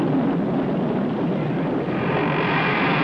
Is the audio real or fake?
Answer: real